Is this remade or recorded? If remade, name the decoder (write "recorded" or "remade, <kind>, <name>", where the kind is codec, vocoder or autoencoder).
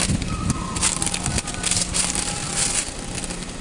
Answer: recorded